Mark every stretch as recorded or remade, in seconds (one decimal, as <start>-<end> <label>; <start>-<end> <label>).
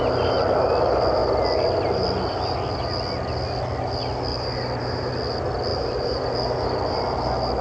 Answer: 0.0-4.3 recorded; 4.3-5.1 remade; 5.1-5.7 recorded; 5.7-6.3 remade; 6.3-7.6 recorded